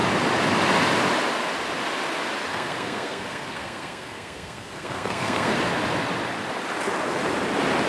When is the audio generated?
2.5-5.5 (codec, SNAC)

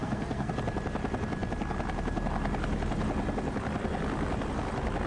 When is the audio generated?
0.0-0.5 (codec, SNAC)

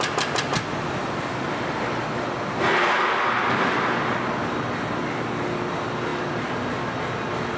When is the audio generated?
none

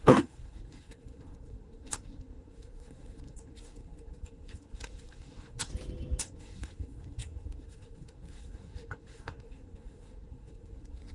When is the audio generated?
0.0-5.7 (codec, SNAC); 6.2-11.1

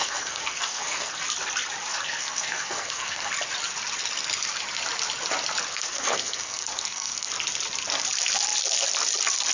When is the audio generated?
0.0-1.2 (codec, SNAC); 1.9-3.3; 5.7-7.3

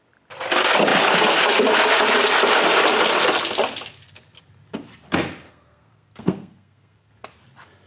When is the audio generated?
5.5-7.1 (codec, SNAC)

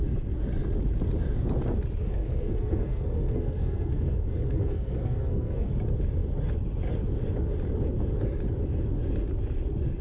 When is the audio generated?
2.0-5.7 (codec, SNAC)